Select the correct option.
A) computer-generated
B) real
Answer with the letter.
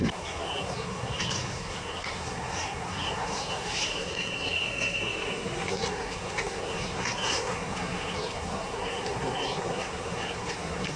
A